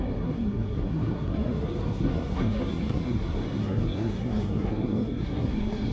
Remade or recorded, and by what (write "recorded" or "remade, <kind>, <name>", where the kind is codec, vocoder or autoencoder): remade, codec, SNAC